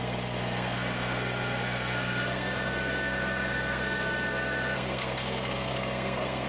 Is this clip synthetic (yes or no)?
yes